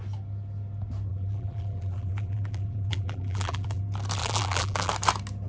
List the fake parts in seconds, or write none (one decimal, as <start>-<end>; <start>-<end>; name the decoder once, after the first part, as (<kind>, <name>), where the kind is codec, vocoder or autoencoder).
1.1-3.8 (vocoder, BigVGAN v2); 4.2-4.9